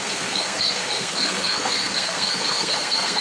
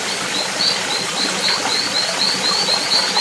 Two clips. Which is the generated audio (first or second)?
first